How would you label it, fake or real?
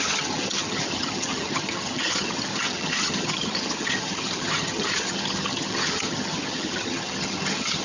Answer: fake